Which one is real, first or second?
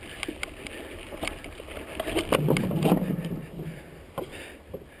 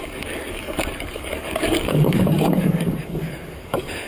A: first